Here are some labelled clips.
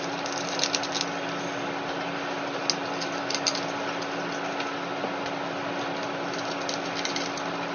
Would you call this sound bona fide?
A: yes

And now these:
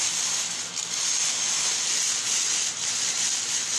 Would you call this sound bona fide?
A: yes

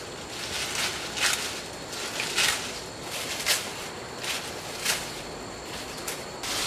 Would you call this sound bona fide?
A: yes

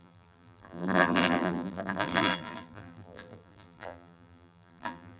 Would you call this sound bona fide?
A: no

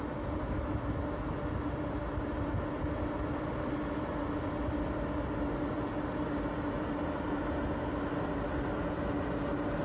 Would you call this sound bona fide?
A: yes